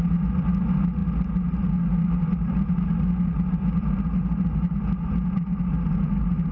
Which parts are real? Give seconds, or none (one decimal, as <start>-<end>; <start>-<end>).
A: 0.0-6.5